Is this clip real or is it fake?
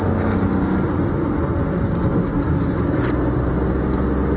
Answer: real